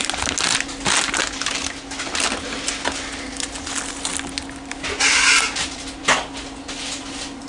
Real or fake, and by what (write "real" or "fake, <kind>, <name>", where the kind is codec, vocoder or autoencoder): real